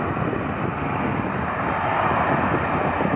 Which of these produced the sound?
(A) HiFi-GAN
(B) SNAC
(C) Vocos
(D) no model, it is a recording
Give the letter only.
D